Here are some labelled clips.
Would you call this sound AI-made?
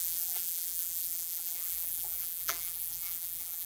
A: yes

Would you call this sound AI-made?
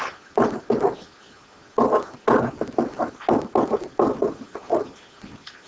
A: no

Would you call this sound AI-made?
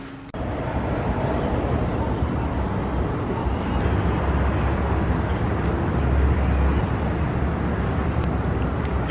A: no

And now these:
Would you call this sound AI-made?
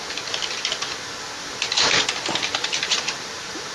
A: no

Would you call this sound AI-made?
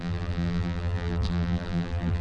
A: yes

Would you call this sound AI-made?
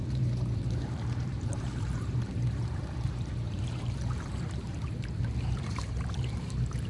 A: yes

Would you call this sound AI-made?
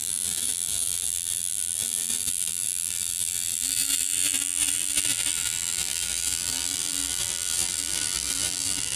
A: yes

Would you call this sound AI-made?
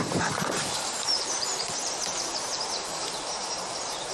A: yes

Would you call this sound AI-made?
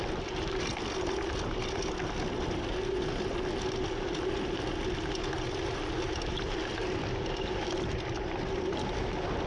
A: no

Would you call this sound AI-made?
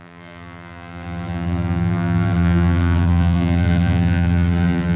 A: yes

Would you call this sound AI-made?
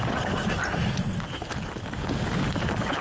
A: no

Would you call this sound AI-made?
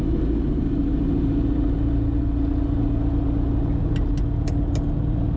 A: no